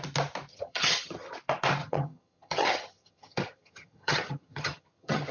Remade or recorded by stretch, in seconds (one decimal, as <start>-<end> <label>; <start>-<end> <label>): 0.0-0.5 recorded; 0.5-1.3 remade; 1.3-1.8 recorded; 1.8-5.3 remade